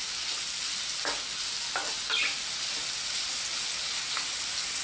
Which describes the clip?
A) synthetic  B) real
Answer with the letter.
B